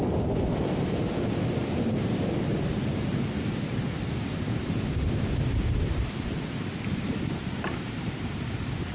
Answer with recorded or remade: remade